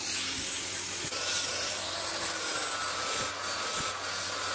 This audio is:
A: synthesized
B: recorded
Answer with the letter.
B